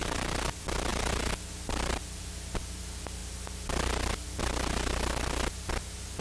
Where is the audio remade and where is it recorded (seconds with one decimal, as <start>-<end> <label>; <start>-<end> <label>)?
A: 0.0-6.2 recorded

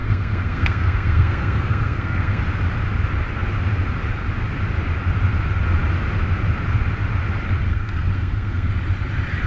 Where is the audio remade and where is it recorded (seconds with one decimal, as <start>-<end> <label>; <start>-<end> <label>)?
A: 0.0-2.4 remade; 2.4-7.7 recorded; 7.7-8.7 remade; 8.7-9.5 recorded

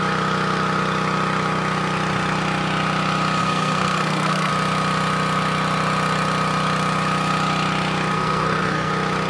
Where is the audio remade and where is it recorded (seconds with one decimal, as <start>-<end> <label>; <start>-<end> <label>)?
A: 0.0-3.4 recorded; 3.4-4.5 remade; 4.5-8.1 recorded; 8.1-8.9 remade; 8.9-9.3 recorded

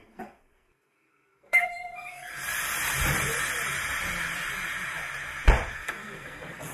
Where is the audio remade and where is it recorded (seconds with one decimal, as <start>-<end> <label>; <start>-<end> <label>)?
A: 0.0-2.3 remade; 2.3-5.7 recorded; 5.7-6.7 remade

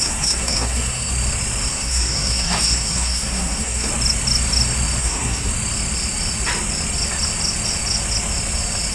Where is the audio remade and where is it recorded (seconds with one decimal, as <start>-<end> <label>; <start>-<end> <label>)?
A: 0.0-1.1 remade; 1.1-1.7 recorded; 1.7-3.9 remade; 3.9-5.0 recorded; 5.0-5.5 remade; 5.5-8.9 recorded

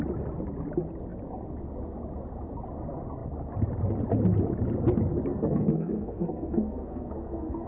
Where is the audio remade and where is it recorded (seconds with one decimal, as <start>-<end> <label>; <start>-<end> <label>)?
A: 0.0-5.3 recorded; 5.3-7.7 remade